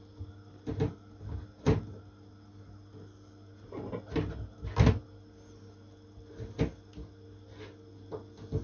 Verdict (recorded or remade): recorded